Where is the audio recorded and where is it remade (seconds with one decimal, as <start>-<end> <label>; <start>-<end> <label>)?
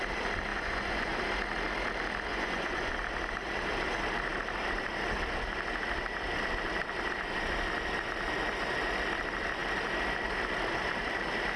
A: 0.0-0.5 recorded; 0.5-1.2 remade; 1.2-2.3 recorded; 2.3-2.9 remade; 2.9-11.6 recorded